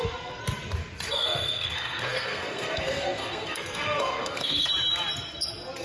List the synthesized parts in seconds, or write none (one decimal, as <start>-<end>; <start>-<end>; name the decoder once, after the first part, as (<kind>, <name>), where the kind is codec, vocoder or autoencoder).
0.0-0.4 (codec, SNAC); 1.1-4.7